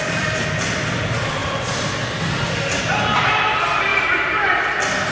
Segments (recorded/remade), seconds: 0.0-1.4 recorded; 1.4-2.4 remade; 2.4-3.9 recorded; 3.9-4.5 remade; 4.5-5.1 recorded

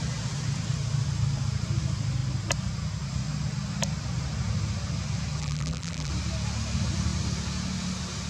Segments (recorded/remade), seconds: 0.0-5.4 recorded; 5.4-6.1 remade; 6.1-8.3 recorded

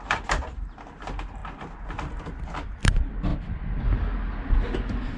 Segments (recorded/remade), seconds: 0.0-5.2 recorded

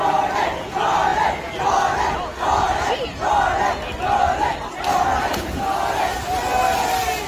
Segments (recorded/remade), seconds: 0.0-6.5 recorded; 6.5-7.3 remade

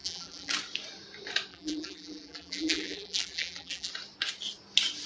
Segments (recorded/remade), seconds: 0.0-0.5 remade; 0.5-1.5 recorded; 1.5-3.9 remade; 3.9-5.1 recorded